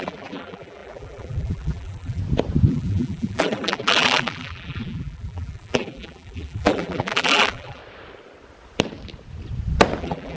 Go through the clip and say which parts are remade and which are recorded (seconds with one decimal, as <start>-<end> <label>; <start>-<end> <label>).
0.0-2.2 remade; 2.2-2.7 recorded; 2.7-7.8 remade; 7.8-10.0 recorded; 10.0-10.4 remade